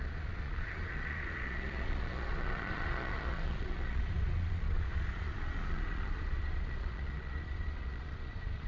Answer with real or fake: fake